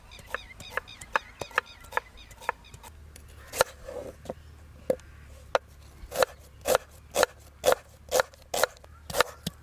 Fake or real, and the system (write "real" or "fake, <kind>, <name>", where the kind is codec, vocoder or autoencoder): real